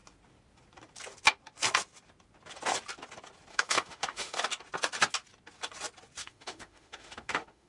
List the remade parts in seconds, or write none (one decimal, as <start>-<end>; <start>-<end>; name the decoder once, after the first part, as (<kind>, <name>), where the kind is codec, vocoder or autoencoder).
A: 3.5-4.4 (autoencoder, DAC-VAE); 6.2-7.7